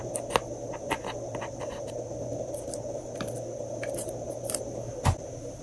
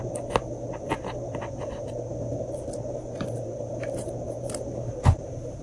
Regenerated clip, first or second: second